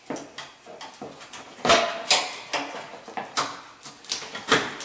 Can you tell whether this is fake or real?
real